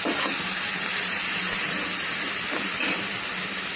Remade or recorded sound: recorded